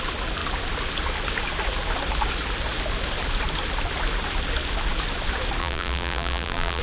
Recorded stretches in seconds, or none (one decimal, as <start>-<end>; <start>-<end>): 0.0-5.6